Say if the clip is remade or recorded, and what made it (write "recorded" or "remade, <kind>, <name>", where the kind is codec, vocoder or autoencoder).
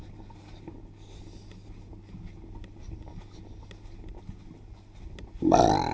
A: recorded